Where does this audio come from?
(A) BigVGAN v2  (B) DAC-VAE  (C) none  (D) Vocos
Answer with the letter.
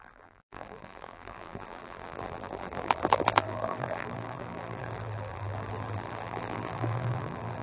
A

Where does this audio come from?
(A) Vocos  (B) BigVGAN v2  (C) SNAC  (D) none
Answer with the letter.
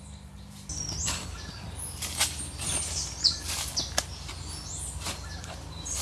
D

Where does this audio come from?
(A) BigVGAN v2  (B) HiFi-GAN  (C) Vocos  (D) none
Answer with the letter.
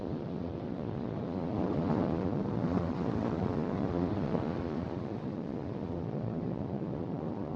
C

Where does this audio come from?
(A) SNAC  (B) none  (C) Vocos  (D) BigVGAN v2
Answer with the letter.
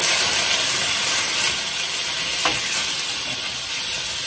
B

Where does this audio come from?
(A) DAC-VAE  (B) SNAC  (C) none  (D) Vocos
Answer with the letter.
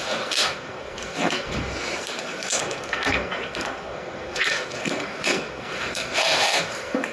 B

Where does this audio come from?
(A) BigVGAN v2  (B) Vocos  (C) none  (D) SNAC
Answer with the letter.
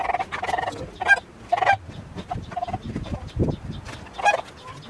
C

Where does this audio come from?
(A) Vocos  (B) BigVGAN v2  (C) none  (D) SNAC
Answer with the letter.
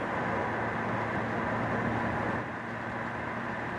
C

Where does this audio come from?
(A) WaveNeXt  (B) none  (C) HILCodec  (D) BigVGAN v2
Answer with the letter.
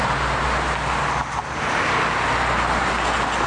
B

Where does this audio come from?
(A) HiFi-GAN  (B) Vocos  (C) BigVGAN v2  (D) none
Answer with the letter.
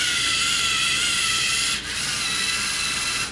C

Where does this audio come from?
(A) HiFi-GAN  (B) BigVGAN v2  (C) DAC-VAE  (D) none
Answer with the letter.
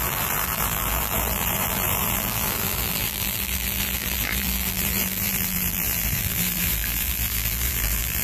B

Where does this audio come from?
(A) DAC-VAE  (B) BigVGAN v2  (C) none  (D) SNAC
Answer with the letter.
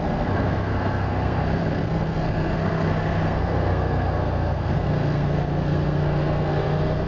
D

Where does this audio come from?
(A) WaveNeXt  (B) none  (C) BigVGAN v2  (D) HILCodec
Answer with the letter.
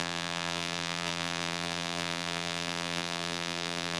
C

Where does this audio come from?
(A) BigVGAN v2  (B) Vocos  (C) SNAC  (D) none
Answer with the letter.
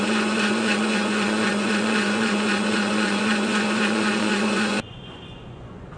B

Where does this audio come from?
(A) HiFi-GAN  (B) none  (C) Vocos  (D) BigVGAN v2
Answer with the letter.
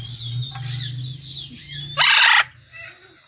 B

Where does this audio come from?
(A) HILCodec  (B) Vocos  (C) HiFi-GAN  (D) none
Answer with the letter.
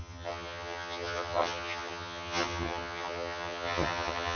C